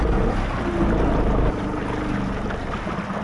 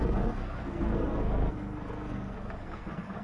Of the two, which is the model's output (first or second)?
second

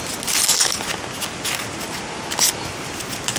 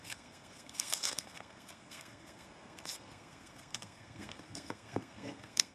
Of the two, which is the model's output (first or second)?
second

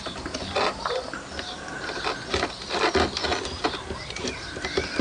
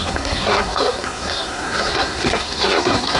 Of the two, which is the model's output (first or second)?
second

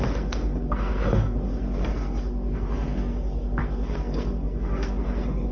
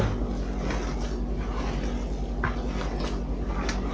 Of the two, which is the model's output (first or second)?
first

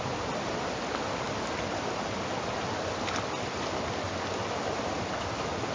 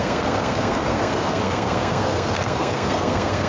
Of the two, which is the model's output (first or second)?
second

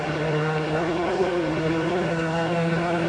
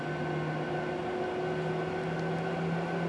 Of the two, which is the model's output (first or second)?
first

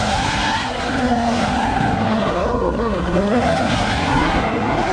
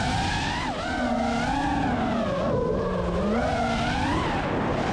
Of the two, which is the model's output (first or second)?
first